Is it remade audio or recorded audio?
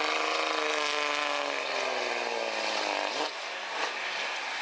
recorded